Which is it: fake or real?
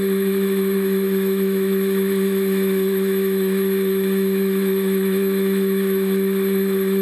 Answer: fake